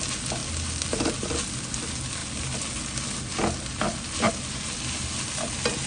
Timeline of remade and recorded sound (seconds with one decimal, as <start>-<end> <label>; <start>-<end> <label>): 0.0-5.9 recorded